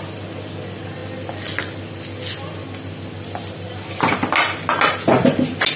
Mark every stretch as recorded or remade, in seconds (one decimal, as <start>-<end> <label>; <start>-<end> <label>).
0.0-5.8 recorded